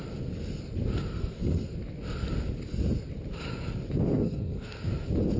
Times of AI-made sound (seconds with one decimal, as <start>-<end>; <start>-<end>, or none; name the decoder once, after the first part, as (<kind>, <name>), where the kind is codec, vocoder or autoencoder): 1.1-1.7 (codec, SNAC); 4.2-4.9